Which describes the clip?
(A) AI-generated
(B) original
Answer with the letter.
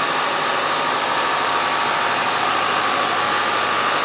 B